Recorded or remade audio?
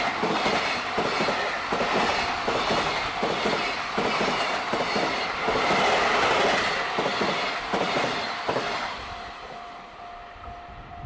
recorded